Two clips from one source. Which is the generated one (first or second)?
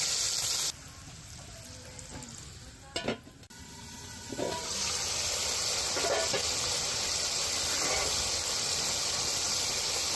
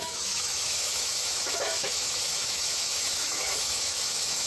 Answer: second